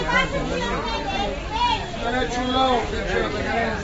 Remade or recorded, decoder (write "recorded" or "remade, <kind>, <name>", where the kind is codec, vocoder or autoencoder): recorded